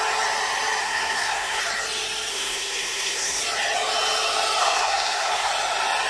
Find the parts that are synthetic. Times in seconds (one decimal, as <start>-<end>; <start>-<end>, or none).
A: 0.8-1.6; 2.3-3.4; 4.6-5.5